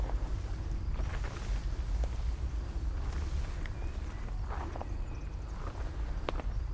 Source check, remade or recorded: recorded